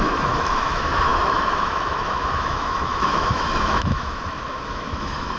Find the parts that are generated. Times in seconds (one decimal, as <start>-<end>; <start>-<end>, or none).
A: 0.0-5.4